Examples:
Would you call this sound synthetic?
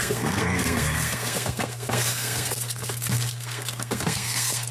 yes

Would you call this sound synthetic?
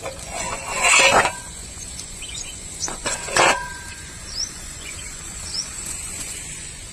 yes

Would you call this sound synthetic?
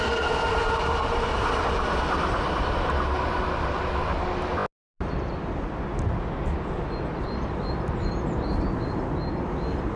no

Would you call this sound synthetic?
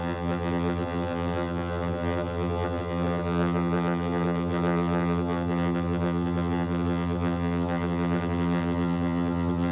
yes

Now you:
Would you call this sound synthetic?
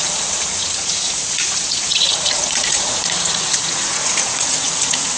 yes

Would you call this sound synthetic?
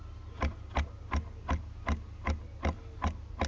no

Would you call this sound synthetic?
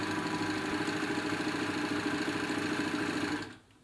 no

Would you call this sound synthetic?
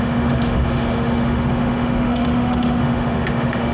yes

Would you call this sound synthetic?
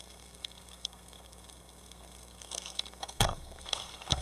yes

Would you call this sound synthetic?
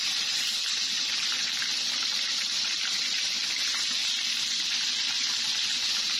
no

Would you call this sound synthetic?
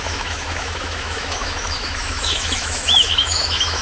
yes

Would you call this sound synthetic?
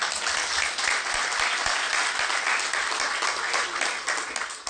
no